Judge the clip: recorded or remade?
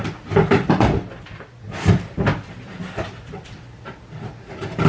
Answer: recorded